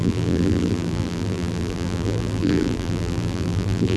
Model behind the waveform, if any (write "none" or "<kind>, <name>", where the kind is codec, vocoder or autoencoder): vocoder, BigVGAN v2